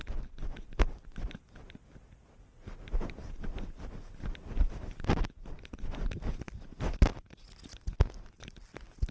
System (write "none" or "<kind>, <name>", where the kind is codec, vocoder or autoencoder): none